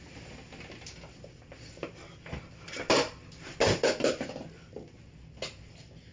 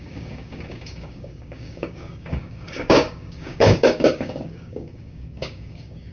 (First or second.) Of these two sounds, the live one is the first